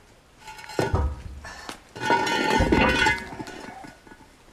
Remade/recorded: recorded